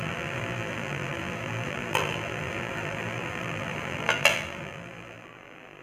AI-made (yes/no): yes